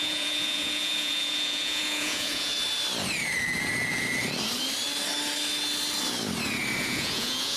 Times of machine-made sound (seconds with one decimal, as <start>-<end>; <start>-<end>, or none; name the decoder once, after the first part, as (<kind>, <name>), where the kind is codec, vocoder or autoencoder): 0.0-2.5 (vocoder, Vocos); 6.8-7.6